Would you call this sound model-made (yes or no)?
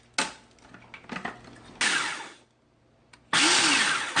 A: no